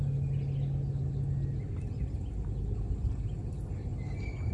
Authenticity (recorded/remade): recorded